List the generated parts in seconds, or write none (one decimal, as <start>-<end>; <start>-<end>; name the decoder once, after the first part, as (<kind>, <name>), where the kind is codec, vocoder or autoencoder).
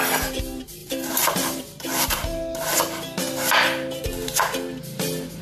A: 0.8-1.9 (vocoder, BigVGAN v2)